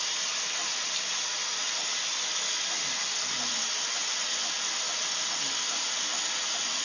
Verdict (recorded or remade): recorded